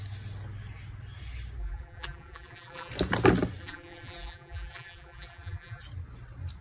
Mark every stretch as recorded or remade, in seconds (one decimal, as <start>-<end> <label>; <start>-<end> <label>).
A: 0.0-1.6 recorded; 1.6-2.9 remade; 2.9-3.6 recorded; 3.6-5.8 remade; 5.8-6.6 recorded